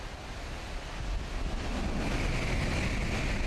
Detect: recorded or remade recorded